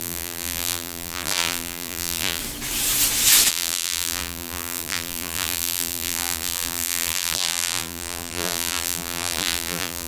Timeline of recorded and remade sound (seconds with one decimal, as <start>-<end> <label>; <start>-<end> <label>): 0.0-2.4 remade; 2.4-3.5 recorded; 3.5-10.1 remade

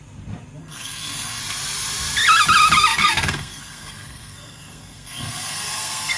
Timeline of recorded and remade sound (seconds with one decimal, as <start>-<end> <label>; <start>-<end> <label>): 0.0-0.6 recorded; 0.6-1.4 remade; 1.4-2.9 recorded; 2.9-6.2 remade

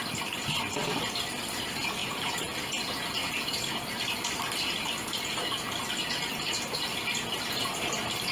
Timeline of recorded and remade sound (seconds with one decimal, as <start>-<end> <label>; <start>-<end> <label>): 0.0-8.3 recorded